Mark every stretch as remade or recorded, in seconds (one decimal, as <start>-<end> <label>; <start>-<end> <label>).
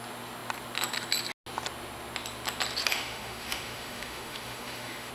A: 0.0-2.9 recorded; 2.9-5.1 remade